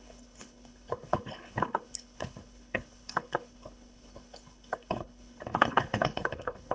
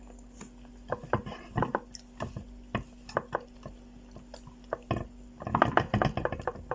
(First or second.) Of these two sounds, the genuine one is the second